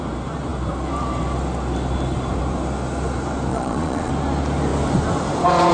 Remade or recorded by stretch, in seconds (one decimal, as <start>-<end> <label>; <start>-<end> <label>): 0.0-3.5 recorded; 3.5-4.1 remade; 4.1-5.7 recorded